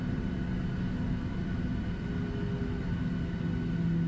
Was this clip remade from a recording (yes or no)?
no